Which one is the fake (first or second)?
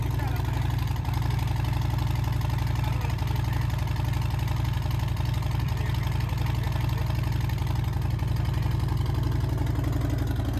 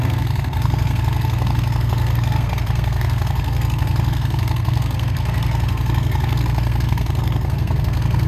second